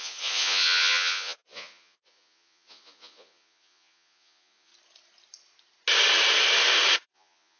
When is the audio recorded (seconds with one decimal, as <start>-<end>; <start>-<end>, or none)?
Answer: 4.7-7.0